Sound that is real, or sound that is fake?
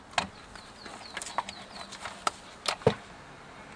real